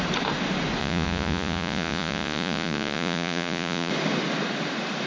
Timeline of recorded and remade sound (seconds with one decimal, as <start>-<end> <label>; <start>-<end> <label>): 0.0-0.8 recorded; 0.8-3.9 remade; 3.9-5.1 recorded